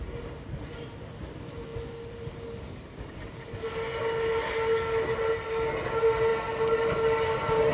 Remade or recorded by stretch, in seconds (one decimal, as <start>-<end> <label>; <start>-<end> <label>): 0.0-7.7 recorded